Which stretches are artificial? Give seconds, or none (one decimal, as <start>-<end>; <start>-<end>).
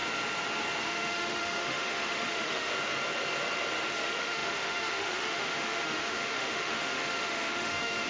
0.8-2.7; 3.9-8.1